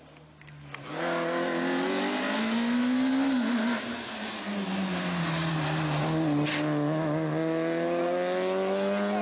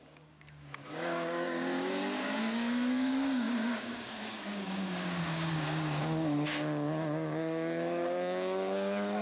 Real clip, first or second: first